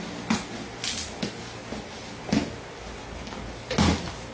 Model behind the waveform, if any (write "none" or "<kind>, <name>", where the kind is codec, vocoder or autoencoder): none